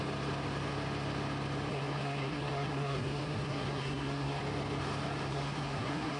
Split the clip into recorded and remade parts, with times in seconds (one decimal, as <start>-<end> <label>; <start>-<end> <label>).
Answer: 0.0-1.7 recorded; 1.7-4.4 remade; 4.4-5.3 recorded; 5.3-6.2 remade